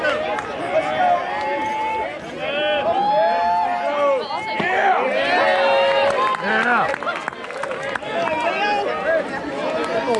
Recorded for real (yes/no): yes